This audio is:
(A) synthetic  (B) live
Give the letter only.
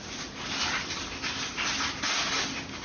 B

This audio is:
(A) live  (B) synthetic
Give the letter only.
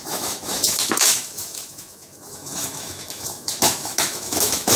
B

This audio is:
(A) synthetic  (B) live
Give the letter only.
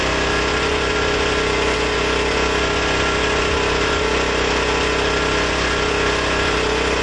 A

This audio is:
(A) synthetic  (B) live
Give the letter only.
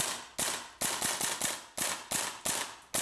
B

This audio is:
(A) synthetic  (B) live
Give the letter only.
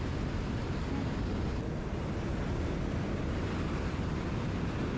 B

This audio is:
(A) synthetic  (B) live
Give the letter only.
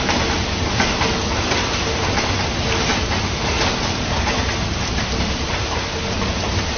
B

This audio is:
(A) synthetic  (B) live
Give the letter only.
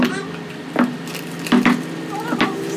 B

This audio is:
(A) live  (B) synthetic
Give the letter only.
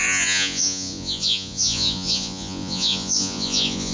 B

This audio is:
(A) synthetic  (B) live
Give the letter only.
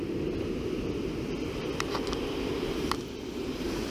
B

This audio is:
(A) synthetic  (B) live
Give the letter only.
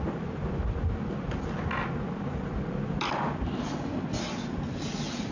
B